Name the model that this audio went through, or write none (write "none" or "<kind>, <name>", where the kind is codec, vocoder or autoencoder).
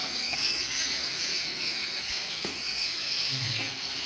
codec, SNAC